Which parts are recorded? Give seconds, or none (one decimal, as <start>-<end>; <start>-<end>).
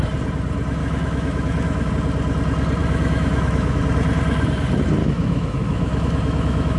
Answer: 0.0-0.8; 1.9-2.8; 3.8-5.0